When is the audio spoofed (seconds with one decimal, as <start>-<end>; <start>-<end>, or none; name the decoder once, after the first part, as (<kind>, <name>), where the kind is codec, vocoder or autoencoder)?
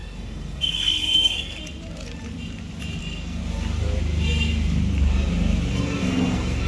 0.0-1.6 (codec, SNAC); 3.0-3.4; 5.7-6.7